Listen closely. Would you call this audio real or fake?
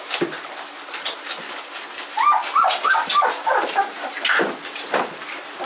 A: real